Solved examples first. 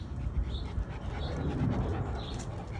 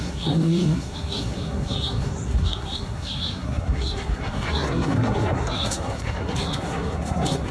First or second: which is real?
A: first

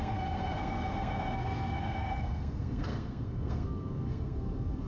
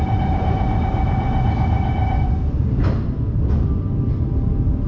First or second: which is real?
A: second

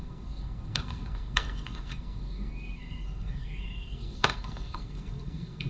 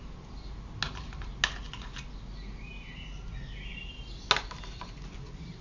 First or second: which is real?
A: second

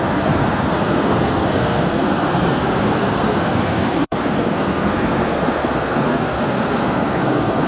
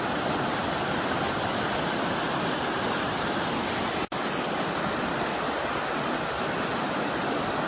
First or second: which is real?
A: second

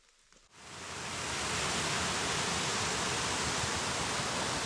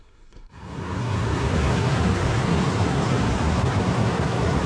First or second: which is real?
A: first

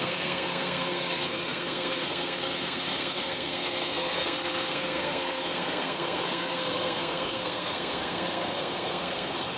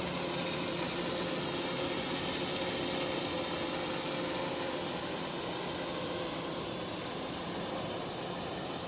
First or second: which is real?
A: second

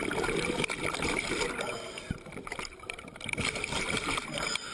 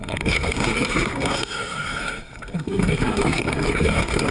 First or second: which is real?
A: first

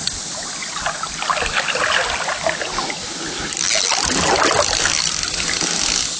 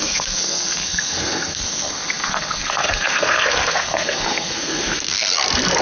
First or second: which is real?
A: first